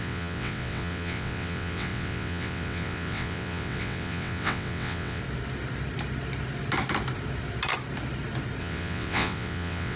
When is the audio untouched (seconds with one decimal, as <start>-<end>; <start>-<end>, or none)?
5.2-8.6